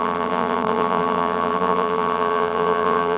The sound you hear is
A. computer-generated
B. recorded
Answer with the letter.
A